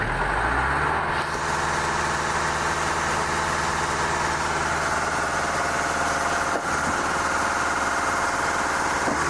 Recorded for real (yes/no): yes